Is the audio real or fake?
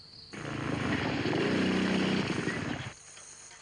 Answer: real